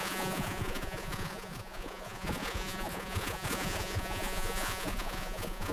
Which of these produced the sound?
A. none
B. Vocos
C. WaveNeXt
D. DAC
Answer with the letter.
B